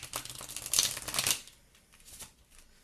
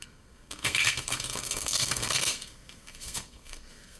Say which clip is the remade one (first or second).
second